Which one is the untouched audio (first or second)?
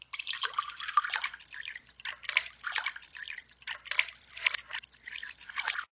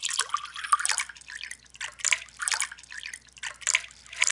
second